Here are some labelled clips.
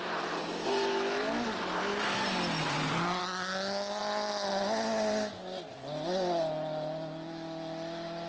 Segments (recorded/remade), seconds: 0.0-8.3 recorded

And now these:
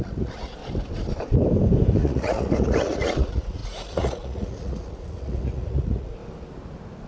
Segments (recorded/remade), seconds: 0.0-0.6 remade; 0.6-1.9 recorded; 1.9-6.2 remade; 6.2-7.1 recorded

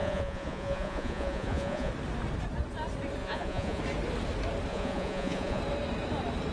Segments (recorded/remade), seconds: 0.0-1.9 remade; 1.9-3.2 recorded; 3.2-3.8 remade; 3.8-4.7 recorded; 4.7-5.6 remade; 5.6-6.5 recorded

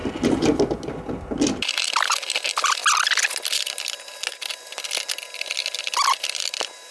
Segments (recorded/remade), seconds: 0.0-6.9 recorded

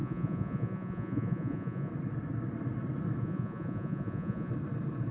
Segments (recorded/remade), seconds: 0.0-1.9 remade; 1.9-3.2 recorded; 3.2-4.5 remade; 4.5-5.1 recorded

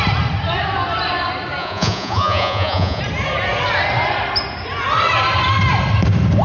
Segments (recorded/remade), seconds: 0.0-1.6 recorded; 1.6-3.0 remade; 3.0-6.4 recorded

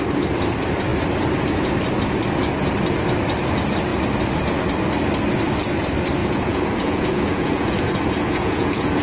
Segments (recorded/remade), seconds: 0.0-6.2 recorded; 6.2-9.0 remade